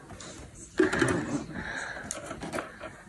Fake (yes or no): no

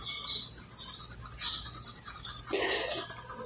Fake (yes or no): no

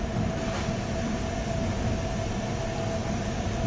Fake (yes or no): no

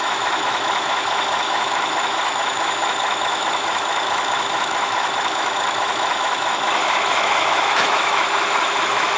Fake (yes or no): yes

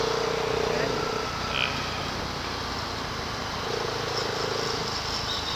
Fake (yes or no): no